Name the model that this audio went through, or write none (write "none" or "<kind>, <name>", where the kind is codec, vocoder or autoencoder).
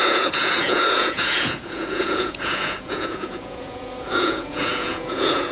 vocoder, Vocos